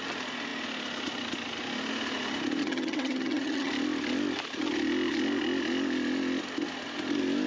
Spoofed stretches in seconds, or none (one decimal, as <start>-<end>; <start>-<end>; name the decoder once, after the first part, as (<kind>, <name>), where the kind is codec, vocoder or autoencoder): 2.6-3.7 (vocoder, HiFi-GAN)